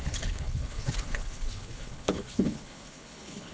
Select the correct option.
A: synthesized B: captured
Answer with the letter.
A